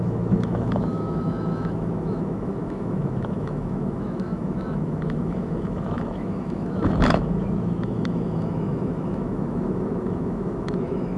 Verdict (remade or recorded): remade